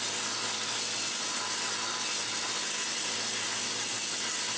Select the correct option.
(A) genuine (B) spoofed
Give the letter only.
A